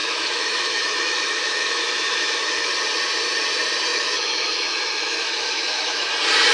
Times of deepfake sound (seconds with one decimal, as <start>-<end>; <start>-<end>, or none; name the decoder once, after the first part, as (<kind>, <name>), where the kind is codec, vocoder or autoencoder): 0.0-2.7 (autoencoder, DAC-VAE); 3.9-6.1